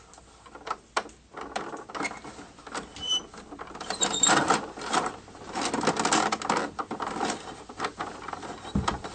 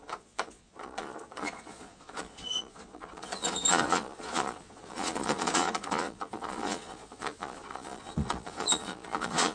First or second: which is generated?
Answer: second